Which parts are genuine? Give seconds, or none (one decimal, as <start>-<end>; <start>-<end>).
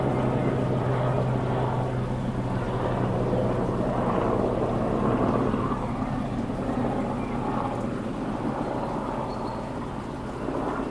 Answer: 0.0-10.9